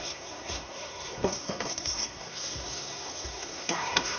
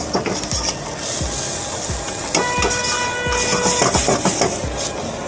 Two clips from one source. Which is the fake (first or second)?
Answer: first